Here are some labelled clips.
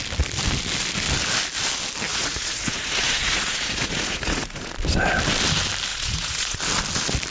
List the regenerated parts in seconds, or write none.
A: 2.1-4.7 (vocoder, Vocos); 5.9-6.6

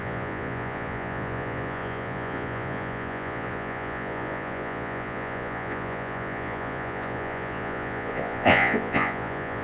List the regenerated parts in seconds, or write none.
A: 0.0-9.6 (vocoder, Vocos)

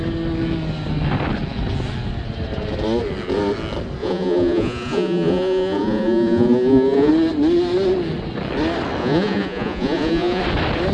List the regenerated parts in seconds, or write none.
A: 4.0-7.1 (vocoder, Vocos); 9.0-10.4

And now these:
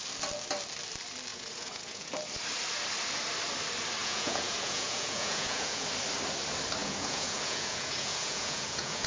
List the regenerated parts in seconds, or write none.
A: 1.3-2.1 (vocoder, Vocos); 4.0-5.9; 6.8-9.1

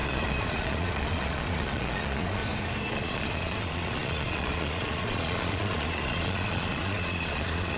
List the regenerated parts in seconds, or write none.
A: 0.0-2.4 (vocoder, Vocos); 2.9-7.8